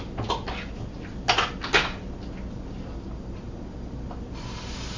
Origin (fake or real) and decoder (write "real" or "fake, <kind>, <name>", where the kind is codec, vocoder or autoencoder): real